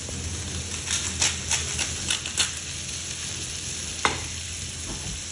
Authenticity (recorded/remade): recorded